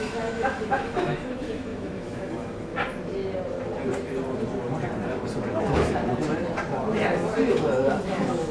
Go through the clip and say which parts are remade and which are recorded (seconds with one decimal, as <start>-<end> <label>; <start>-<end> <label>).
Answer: 0.0-2.7 remade; 2.7-5.6 recorded; 5.6-6.0 remade; 6.0-7.5 recorded; 7.5-8.5 remade